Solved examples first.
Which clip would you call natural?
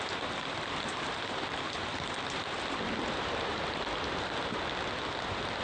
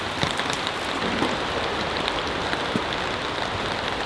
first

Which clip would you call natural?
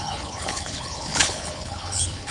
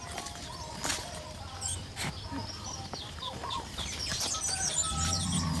second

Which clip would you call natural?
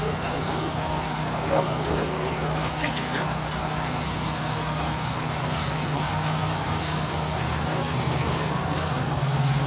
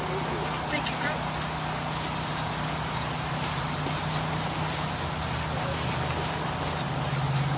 second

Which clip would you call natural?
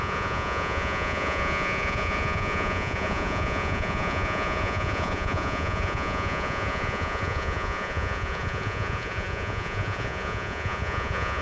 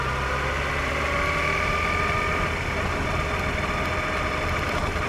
second